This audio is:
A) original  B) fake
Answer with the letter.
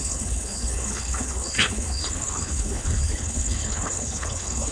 B